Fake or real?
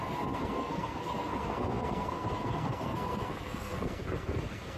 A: fake